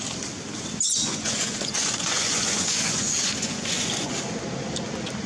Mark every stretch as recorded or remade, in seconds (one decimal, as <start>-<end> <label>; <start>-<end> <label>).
0.0-1.0 recorded; 1.0-4.2 remade; 4.2-5.3 recorded